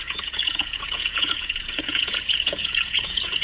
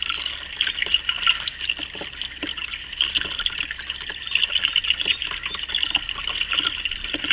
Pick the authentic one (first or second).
second